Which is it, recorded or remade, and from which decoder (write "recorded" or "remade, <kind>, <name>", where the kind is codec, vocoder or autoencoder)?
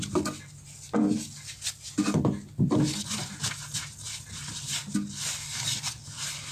recorded